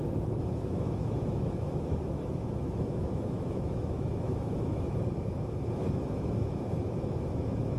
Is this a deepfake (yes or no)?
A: yes